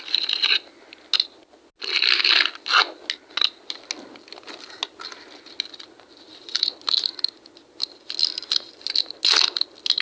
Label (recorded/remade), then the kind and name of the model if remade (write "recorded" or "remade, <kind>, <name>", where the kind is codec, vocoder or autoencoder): recorded